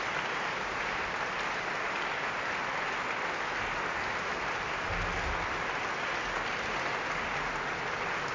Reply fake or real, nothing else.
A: real